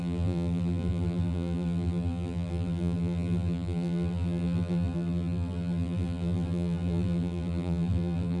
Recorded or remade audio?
remade